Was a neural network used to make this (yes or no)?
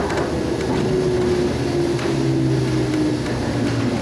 no